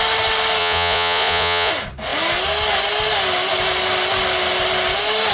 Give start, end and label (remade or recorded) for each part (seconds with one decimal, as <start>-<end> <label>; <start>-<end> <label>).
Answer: 0.0-0.6 recorded; 0.6-1.7 remade; 1.7-5.3 recorded